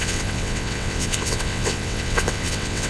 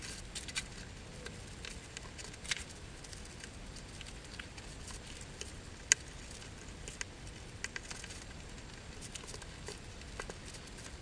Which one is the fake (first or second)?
first